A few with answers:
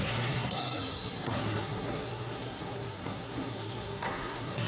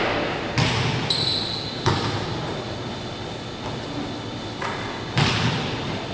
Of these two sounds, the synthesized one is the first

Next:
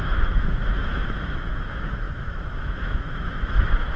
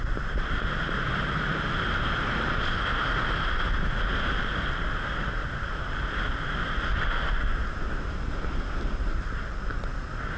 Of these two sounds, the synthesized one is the first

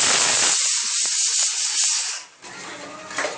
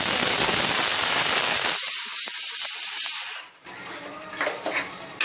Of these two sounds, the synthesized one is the second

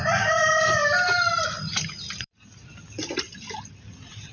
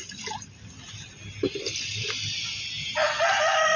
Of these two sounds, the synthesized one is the first